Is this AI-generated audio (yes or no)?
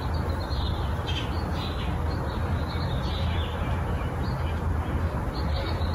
no